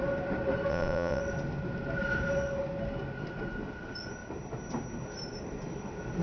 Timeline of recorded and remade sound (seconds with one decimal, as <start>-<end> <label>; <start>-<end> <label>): 0.0-0.7 recorded; 0.7-1.2 remade; 1.2-6.2 recorded